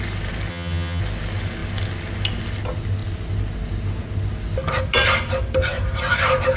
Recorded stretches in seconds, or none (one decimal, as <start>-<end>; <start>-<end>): 0.0-0.5; 1.0-6.6